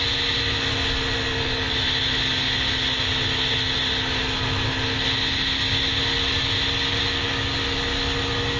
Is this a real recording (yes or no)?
yes